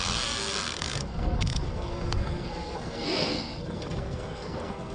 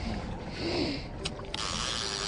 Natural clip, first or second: second